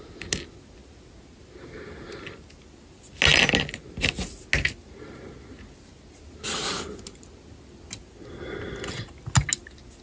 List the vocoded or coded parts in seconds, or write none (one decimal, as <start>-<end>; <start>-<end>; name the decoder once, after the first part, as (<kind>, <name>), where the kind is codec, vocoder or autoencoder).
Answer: none

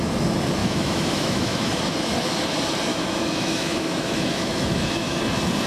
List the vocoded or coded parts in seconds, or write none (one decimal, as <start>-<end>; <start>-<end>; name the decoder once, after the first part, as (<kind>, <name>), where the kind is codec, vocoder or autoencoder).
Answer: 0.6-1.8 (autoencoder, DAC-VAE); 2.9-5.2

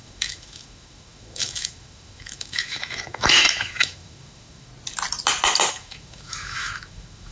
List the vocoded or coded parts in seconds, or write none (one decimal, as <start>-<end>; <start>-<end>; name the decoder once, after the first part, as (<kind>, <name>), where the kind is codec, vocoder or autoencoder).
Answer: 0.0-4.7 (autoencoder, DAC-VAE); 5.7-7.3

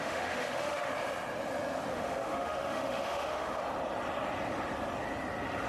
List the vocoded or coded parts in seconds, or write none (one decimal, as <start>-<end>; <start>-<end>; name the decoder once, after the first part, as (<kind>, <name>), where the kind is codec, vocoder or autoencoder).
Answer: 0.0-0.9 (autoencoder, DAC-VAE); 1.9-3.6

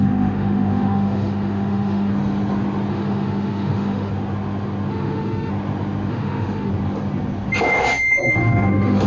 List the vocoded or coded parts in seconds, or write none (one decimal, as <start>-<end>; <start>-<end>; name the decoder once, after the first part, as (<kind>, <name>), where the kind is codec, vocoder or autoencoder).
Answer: 0.0-2.1 (autoencoder, DAC-VAE); 2.9-4.1; 4.9-5.5; 6.1-6.7; 8.3-9.1